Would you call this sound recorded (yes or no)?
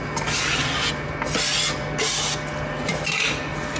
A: yes